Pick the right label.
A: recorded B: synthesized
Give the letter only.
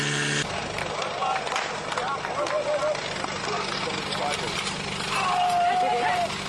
A